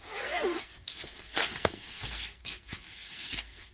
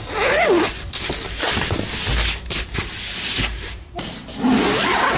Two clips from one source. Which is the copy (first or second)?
first